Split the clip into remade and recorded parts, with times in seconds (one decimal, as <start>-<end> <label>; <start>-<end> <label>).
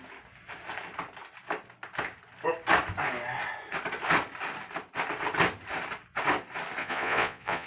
0.0-6.8 recorded; 6.8-7.7 remade